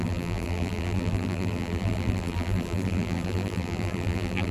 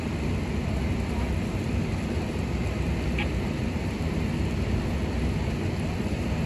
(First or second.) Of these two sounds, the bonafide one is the second